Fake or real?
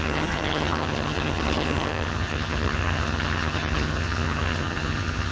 fake